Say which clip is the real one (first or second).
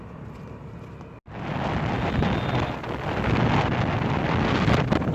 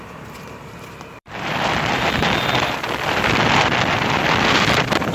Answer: first